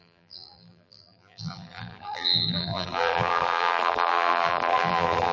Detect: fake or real fake